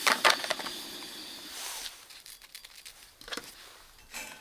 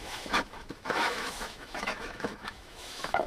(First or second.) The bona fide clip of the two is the first